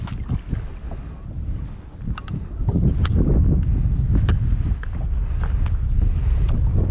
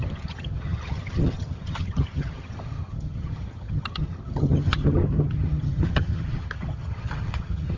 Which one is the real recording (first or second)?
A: first